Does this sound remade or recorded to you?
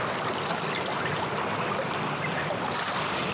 recorded